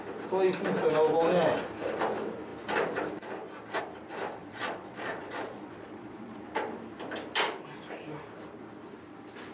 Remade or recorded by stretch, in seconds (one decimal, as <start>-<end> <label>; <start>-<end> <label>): 0.0-4.4 recorded; 4.4-6.4 remade; 6.4-9.5 recorded